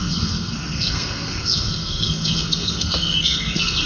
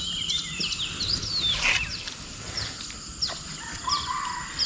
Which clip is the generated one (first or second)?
first